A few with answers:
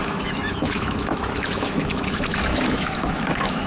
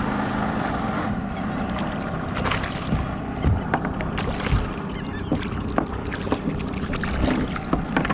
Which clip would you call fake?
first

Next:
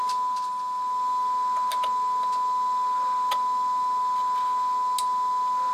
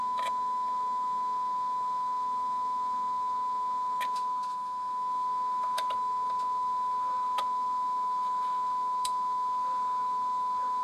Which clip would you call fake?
second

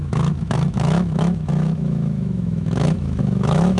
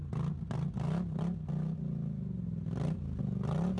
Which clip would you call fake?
first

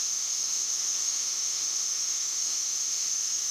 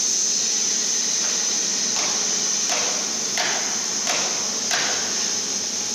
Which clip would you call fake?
first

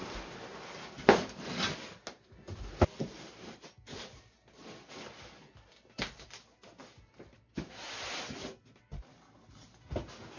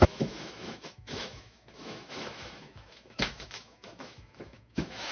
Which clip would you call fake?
second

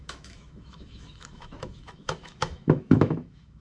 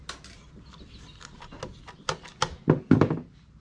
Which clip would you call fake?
first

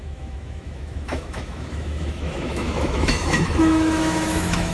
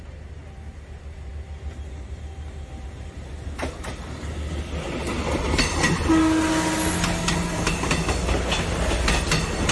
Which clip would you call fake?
first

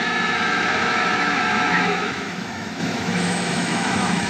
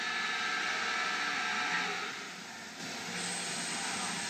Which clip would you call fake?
first